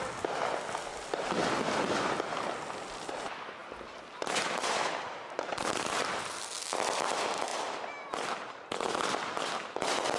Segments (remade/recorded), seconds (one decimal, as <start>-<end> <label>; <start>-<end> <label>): 0.0-0.9 recorded; 0.9-3.1 remade; 3.1-3.6 recorded; 3.6-4.8 remade; 4.8-5.5 recorded; 5.5-6.4 remade; 6.4-10.2 recorded